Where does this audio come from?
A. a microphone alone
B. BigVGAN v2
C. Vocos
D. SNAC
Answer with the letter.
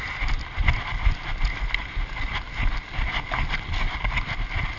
A